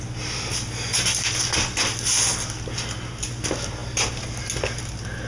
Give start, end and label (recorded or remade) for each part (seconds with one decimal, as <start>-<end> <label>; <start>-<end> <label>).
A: 0.0-5.3 recorded